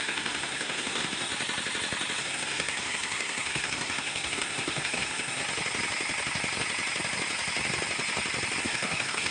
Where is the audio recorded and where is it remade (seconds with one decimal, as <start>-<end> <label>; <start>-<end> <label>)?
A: 0.0-1.3 remade; 1.3-2.2 recorded; 2.2-5.4 remade; 5.4-8.6 recorded; 8.6-9.3 remade